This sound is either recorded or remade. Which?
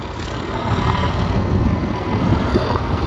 remade